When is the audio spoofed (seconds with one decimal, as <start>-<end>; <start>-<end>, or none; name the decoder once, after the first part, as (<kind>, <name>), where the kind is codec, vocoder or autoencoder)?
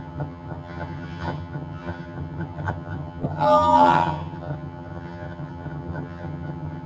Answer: 0.0-6.9 (vocoder, HiFi-GAN)